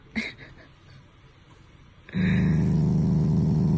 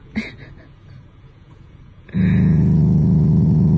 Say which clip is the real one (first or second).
first